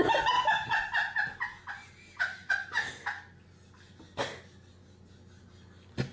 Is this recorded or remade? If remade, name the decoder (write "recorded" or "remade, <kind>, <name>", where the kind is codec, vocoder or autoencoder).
recorded